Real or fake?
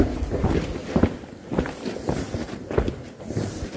real